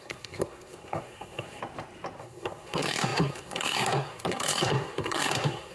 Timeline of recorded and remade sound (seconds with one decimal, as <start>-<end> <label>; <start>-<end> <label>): 0.0-1.6 remade; 1.6-2.2 recorded; 2.2-5.7 remade